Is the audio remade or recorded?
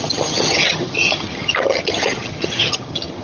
remade